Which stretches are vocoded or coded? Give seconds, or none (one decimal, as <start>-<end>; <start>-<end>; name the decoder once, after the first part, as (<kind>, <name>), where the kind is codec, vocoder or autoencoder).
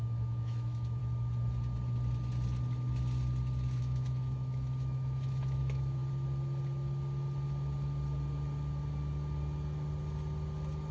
0.0-1.0 (autoencoder, DAC-VAE); 3.8-6.0